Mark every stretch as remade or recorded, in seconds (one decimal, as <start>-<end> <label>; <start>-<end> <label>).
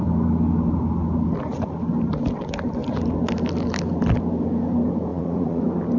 0.0-5.1 recorded; 5.1-5.6 remade; 5.6-6.0 recorded